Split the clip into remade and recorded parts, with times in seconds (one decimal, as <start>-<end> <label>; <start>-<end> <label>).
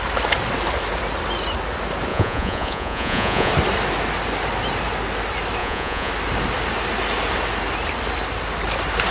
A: 0.0-2.1 recorded; 2.1-3.5 remade; 3.5-5.6 recorded; 5.6-6.1 remade; 6.1-9.1 recorded